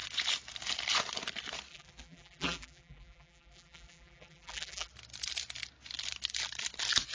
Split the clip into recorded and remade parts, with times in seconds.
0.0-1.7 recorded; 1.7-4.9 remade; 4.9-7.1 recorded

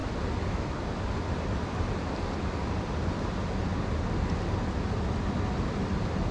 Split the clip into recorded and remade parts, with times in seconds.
0.0-6.3 recorded

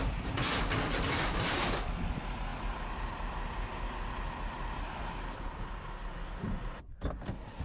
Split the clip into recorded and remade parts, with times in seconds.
0.0-0.7 remade; 0.7-7.6 recorded

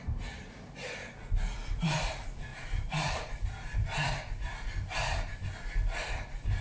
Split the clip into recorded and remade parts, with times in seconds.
0.0-2.5 recorded; 2.5-3.7 remade; 3.7-6.6 recorded

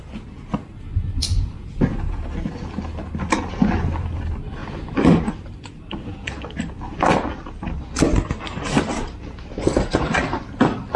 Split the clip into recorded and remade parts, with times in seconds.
0.0-4.6 recorded; 4.6-7.0 remade; 7.0-11.0 recorded

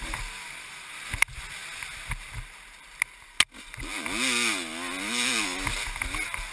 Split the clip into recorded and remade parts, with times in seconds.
0.0-6.5 recorded